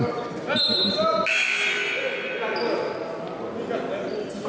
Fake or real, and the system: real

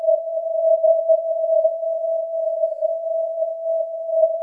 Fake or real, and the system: fake, codec, SNAC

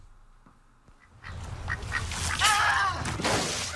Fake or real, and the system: real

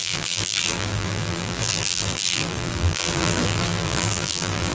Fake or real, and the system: fake, vocoder, BigVGAN v2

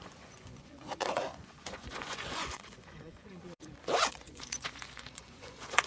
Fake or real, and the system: fake, vocoder, Vocos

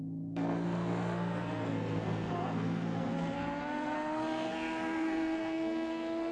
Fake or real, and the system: fake, codec, SNAC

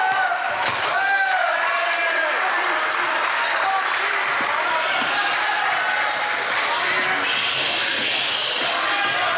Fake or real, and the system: real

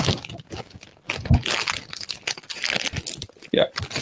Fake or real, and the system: real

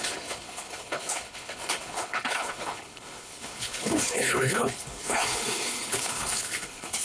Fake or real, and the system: fake, codec, HILCodec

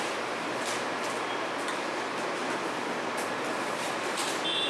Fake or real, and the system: real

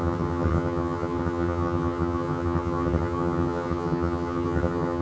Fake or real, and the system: fake, vocoder, HiFi-GAN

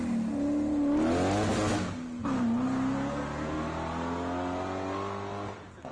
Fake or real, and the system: real